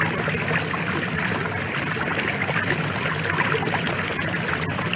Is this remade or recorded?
recorded